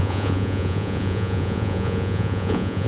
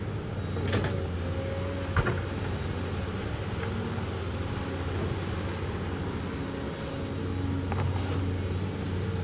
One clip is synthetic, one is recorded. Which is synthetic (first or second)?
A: first